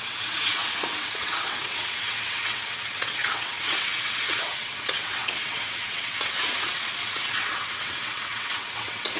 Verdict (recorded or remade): remade